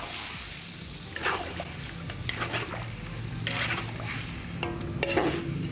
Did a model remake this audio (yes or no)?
no